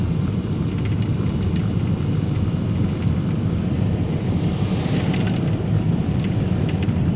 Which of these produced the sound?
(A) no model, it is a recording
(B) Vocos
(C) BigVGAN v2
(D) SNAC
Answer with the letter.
A